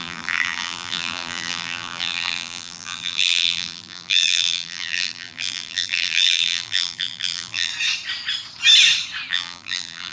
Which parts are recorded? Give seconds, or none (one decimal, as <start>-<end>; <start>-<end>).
7.7-9.3

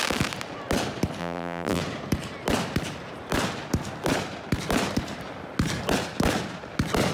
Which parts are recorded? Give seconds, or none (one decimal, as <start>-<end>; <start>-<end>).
0.0-1.2; 1.8-7.1

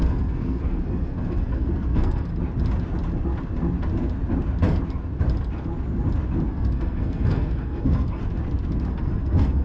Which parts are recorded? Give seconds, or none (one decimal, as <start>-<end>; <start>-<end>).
2.3-6.5; 8.2-8.9

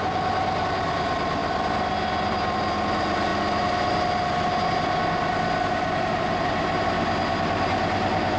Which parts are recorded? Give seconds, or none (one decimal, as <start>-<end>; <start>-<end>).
0.0-8.4

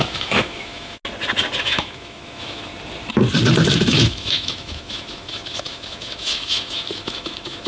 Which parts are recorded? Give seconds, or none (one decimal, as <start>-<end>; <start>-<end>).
1.0-1.6; 2.7-3.7

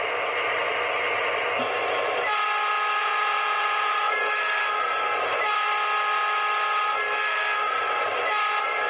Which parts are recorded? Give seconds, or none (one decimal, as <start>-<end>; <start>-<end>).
0.0-3.0; 4.3-8.9

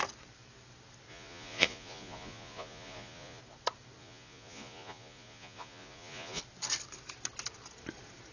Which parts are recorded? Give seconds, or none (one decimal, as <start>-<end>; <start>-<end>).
0.0-1.1; 3.4-4.0; 6.4-8.3